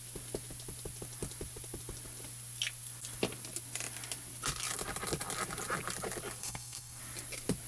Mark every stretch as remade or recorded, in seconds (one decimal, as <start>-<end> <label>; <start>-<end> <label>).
0.0-6.4 recorded; 6.4-7.0 remade; 7.0-7.7 recorded